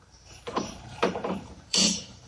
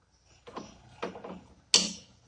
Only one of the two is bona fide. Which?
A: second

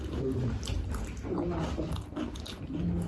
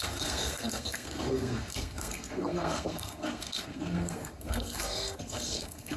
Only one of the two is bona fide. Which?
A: first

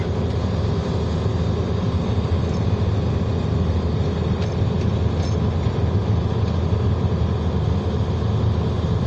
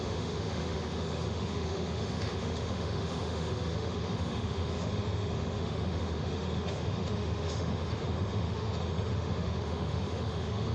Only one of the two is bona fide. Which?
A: first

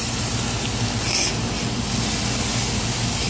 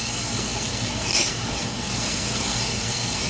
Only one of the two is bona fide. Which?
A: first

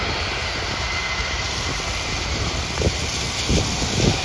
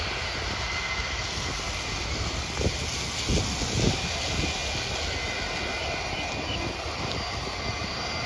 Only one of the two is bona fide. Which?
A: second